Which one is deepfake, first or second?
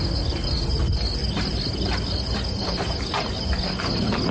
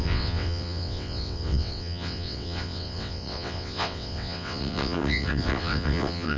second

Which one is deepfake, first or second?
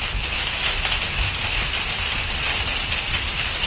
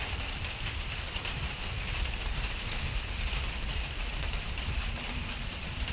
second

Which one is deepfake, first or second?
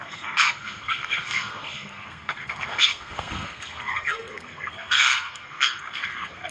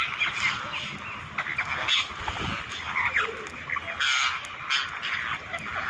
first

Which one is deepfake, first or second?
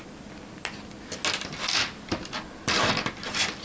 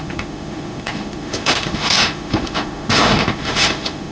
second